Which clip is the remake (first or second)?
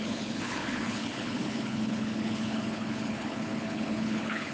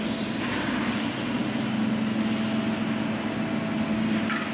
first